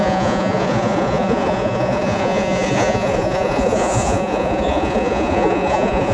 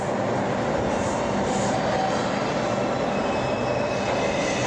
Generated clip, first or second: first